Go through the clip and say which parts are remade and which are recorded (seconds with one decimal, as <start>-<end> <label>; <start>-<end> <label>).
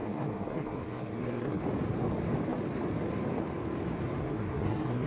0.0-1.6 remade; 1.6-4.2 recorded; 4.2-5.1 remade